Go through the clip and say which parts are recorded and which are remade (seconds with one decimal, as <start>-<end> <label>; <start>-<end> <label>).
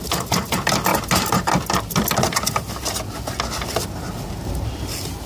0.0-5.3 recorded